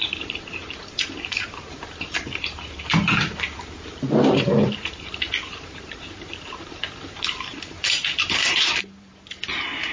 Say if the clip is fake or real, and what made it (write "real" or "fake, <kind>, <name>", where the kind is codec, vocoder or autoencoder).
fake, vocoder, BigVGAN v2